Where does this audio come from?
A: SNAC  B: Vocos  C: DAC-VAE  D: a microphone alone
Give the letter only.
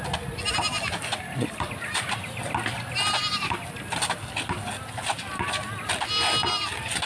D